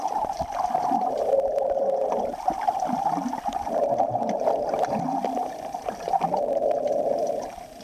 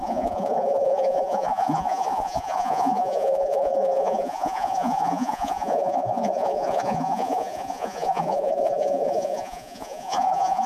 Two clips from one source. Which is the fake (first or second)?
second